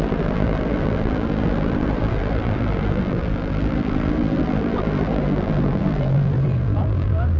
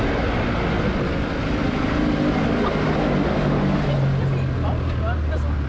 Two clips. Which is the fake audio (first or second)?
first